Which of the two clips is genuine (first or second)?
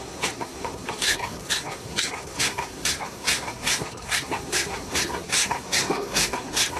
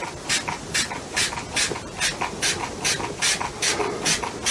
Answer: second